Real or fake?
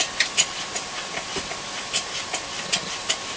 real